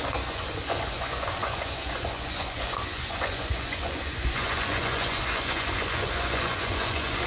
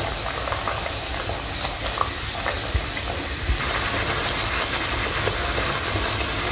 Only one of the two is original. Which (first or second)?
second